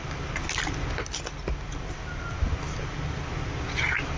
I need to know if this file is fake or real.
real